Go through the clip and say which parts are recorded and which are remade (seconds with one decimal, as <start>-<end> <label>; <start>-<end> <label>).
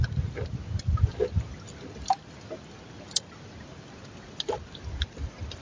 0.0-5.6 recorded